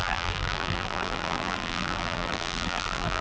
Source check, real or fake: fake